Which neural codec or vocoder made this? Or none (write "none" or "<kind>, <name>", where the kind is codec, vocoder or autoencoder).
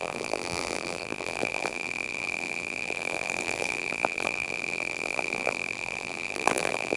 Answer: vocoder, BigVGAN v2